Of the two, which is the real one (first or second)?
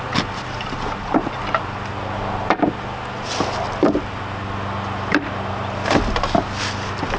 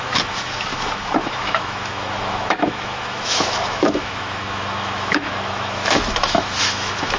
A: first